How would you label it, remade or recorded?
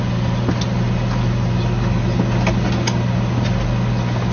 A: recorded